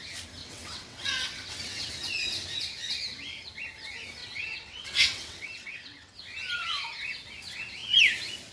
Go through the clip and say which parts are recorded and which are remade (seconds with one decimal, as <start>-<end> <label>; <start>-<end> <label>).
0.0-0.4 recorded; 0.4-1.9 remade; 1.9-4.2 recorded; 4.2-6.2 remade; 6.2-8.5 recorded